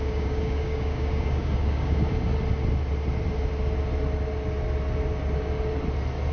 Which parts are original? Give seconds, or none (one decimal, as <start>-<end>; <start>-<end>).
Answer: 2.3-6.3